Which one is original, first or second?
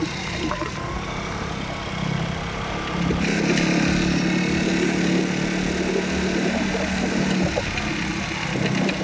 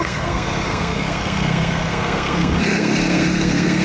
first